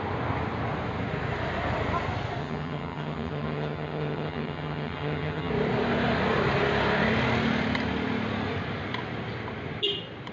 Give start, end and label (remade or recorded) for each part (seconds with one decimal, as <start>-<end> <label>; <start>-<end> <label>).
0.0-2.4 recorded; 2.4-5.5 remade; 5.5-10.3 recorded